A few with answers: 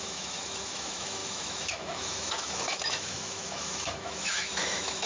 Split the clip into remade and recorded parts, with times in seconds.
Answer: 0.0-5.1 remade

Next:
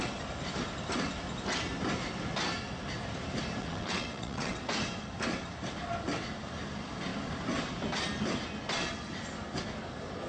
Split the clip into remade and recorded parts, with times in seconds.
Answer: 0.0-3.6 recorded; 3.6-4.6 remade; 4.6-10.3 recorded

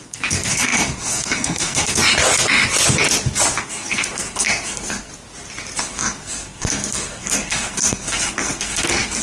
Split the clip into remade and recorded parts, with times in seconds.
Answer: 0.0-2.0 remade; 2.0-3.6 recorded; 3.6-5.1 remade; 5.1-5.8 recorded; 5.8-9.2 remade

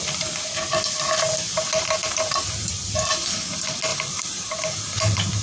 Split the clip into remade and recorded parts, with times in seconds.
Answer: 0.0-3.9 recorded; 3.9-4.5 remade; 4.5-5.4 recorded

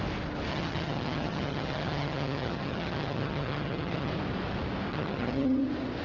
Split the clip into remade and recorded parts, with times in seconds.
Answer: 0.0-0.5 recorded; 0.5-4.1 remade; 4.1-4.9 recorded; 4.9-5.6 remade; 5.6-6.0 recorded

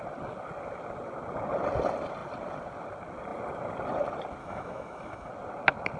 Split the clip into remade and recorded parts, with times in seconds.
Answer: 0.0-4.4 recorded; 4.4-5.3 remade; 5.3-6.0 recorded

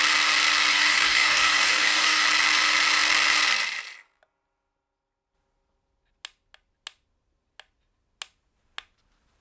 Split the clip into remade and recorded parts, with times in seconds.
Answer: 0.0-0.7 recorded; 0.7-2.2 remade; 2.2-9.4 recorded

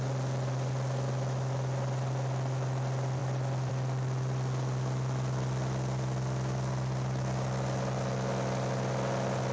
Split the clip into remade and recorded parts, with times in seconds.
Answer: 0.0-9.5 recorded